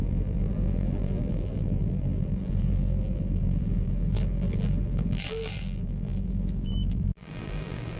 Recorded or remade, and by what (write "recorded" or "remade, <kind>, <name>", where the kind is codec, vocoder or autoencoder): remade, vocoder, BigVGAN v2